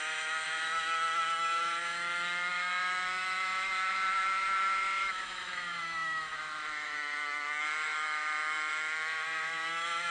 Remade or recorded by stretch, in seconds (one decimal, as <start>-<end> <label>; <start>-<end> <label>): 0.0-10.1 remade